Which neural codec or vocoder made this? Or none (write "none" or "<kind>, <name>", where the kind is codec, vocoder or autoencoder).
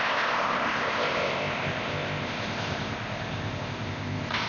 codec, ZipCodec